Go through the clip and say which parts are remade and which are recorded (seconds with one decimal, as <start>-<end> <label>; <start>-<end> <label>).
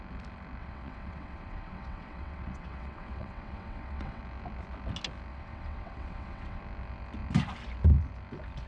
0.0-0.6 recorded; 0.6-4.2 remade; 4.2-5.3 recorded; 5.3-6.6 remade; 6.6-8.7 recorded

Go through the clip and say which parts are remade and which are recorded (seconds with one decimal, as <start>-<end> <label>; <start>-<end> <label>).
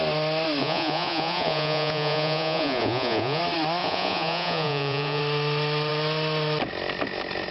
0.0-0.6 recorded; 0.6-3.4 remade; 3.4-3.8 recorded; 3.8-5.2 remade; 5.2-7.5 recorded